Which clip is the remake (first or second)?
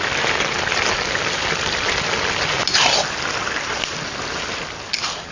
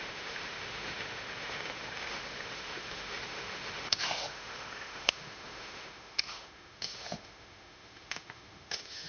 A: second